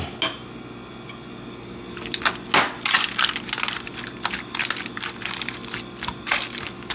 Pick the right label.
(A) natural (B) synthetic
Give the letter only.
A